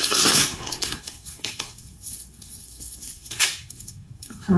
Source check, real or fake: fake